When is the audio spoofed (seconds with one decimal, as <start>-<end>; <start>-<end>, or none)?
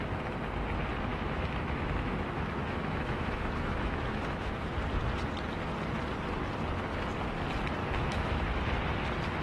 1.1-4.7; 7.8-8.6